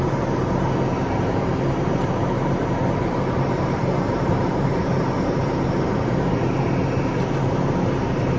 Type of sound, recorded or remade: remade